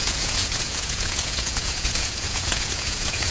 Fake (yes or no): yes